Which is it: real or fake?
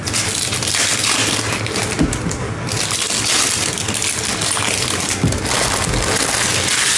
real